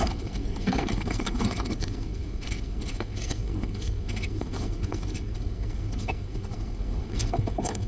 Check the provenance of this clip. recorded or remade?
remade